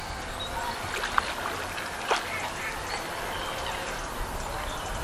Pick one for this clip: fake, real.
real